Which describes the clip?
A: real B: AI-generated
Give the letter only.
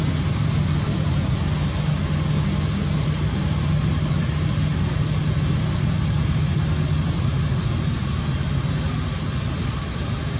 A